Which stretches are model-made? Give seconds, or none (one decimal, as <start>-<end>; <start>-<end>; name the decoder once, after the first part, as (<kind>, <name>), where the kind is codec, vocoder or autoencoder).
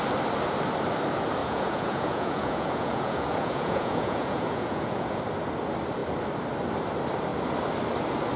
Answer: 1.4-5.2 (vocoder, Vocos)